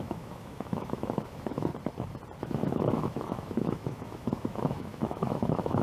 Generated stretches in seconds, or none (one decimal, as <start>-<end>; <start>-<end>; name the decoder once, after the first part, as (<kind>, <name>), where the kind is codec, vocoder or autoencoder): 0.0-1.7 (autoencoder, DAC-VAE); 2.4-5.8